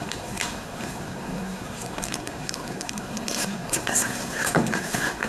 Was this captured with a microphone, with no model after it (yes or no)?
no